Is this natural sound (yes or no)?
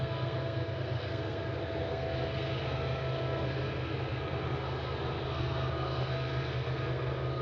no